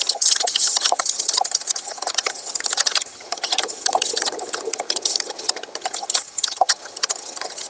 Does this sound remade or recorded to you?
remade